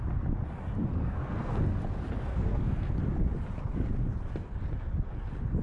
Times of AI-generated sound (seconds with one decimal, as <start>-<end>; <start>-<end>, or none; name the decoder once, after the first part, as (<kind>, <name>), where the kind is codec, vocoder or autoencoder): 1.0-1.5 (codec, SNAC); 2.2-2.9